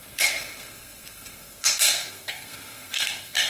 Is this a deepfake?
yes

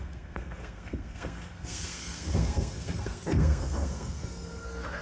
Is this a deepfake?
yes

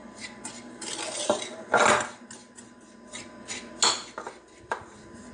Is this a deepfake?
no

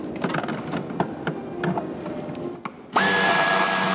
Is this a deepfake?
no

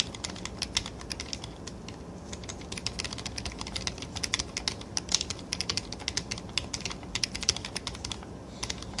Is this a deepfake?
no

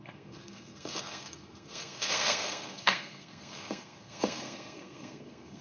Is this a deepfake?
yes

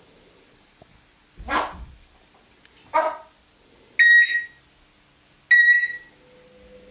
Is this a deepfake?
no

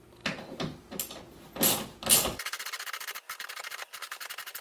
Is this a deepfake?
no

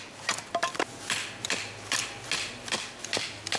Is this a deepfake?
no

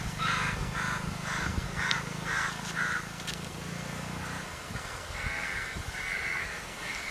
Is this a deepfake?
yes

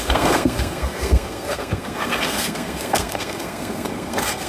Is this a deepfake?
yes